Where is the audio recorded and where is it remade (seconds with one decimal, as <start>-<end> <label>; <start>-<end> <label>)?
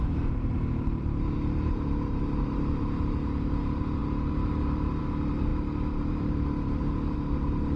0.0-5.5 remade; 5.5-6.1 recorded; 6.1-7.8 remade